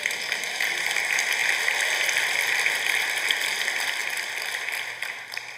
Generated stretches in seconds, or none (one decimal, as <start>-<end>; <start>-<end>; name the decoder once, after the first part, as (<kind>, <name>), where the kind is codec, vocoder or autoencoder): none